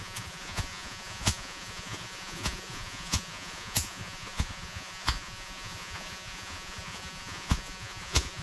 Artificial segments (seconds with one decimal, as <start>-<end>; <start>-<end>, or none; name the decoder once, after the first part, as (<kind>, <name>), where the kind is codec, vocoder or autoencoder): 0.0-8.4 (vocoder, Vocos)